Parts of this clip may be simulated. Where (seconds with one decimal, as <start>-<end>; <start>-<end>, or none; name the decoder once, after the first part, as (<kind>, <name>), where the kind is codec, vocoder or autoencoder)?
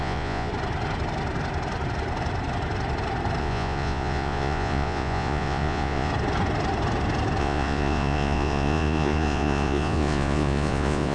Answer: 0.0-0.5 (vocoder, Vocos); 3.4-6.1; 7.4-11.1